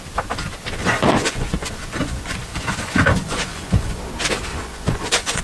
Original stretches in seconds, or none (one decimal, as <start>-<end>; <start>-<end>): 0.0-0.8; 4.0-4.5